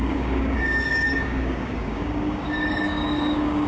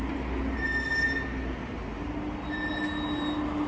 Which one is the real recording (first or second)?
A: second